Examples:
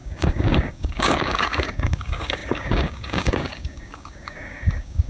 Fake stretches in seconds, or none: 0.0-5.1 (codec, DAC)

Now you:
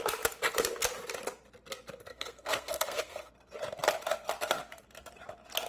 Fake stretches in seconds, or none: 2.1-3.3 (codec, SNAC)

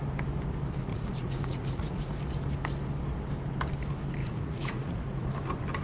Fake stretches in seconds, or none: 0.9-2.1 (vocoder, Vocos); 4.2-5.3

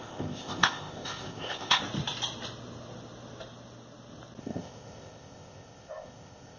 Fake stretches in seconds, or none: 0.0-1.8 (codec, ZipCodec); 4.4-6.6

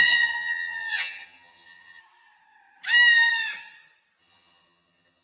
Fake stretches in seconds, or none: 0.0-2.0 (vocoder, HiFi-GAN); 4.2-5.2

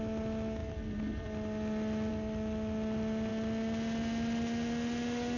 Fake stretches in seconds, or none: none

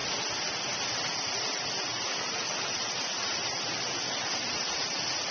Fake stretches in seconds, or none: none